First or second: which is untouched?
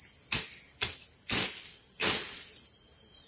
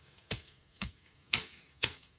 first